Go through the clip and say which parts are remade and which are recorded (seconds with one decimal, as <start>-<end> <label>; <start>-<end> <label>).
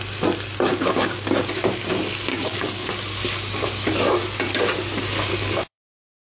0.0-0.7 recorded; 0.7-1.4 remade; 1.4-2.3 recorded; 2.3-2.9 remade; 2.9-5.3 recorded; 5.3-6.2 remade